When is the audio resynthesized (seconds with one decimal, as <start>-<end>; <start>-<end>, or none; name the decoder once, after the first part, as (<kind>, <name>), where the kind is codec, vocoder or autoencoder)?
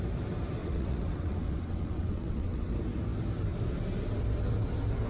0.6-2.7 (vocoder, WaveNeXt)